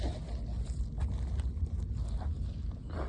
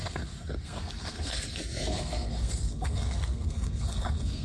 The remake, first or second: second